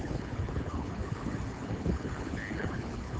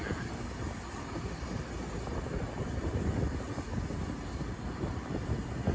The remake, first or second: first